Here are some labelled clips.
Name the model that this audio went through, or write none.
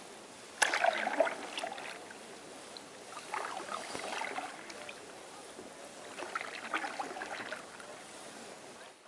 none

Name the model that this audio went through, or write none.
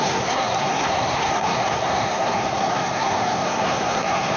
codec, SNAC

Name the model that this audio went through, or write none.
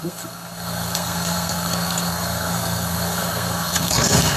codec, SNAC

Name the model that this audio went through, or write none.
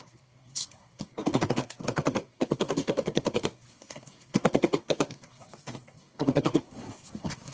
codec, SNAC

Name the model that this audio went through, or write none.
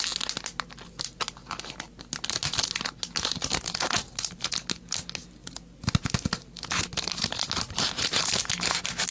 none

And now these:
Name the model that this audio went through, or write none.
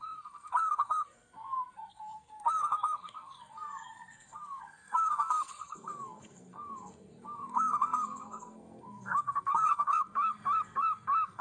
codec, SNAC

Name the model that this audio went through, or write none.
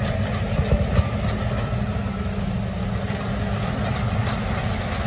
none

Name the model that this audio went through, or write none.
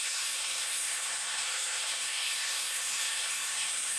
codec, SNAC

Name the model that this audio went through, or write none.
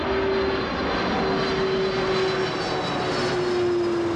none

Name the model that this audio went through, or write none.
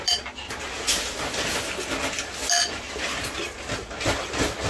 none